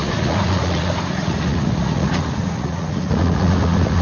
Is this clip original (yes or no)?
no